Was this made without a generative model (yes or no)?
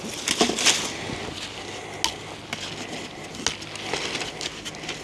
yes